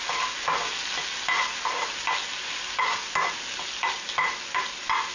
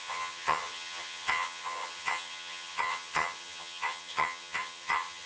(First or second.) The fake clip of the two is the second